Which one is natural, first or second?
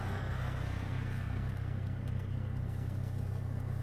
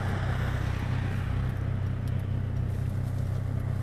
second